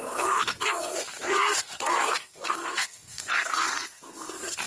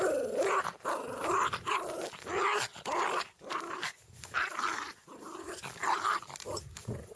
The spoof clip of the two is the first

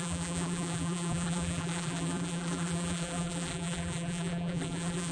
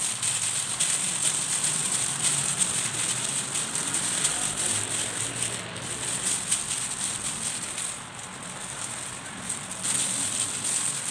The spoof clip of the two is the first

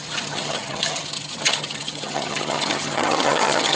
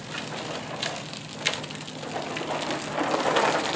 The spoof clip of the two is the first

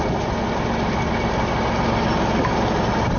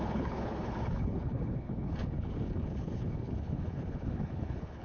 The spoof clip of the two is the second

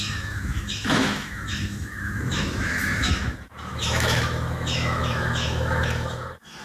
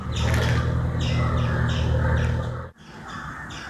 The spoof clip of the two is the first